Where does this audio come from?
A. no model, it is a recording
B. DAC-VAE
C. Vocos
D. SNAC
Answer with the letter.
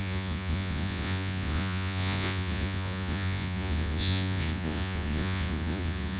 C